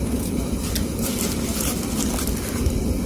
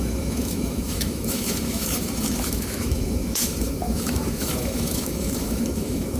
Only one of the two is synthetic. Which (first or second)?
second